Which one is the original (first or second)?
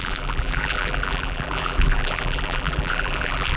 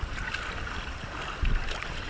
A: second